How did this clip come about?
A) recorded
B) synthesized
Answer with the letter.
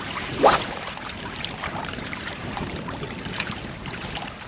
B